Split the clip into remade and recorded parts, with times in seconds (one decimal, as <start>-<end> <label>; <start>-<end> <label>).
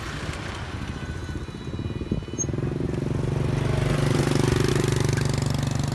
0.0-5.9 recorded